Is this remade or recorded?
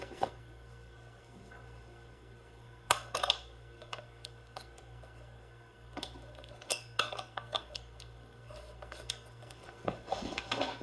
remade